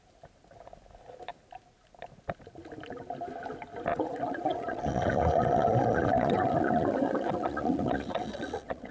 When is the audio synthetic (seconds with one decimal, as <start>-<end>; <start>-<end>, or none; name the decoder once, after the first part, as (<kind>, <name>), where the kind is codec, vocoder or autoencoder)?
3.9-8.9 (vocoder, Vocos)